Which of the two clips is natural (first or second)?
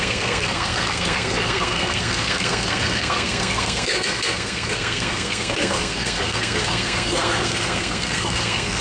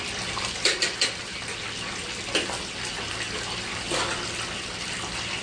second